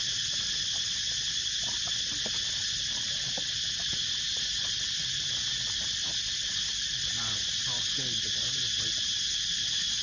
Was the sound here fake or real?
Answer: real